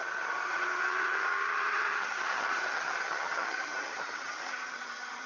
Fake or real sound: fake